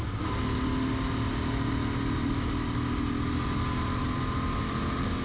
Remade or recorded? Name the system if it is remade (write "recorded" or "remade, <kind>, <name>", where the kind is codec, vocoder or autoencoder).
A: recorded